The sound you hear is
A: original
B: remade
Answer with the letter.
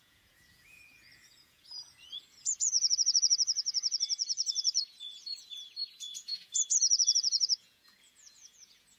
B